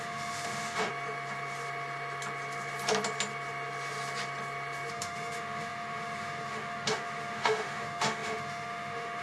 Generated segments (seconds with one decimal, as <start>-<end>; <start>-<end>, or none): 0.0-0.9; 4.9-9.2